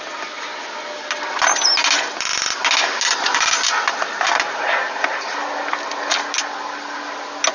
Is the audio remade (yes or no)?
no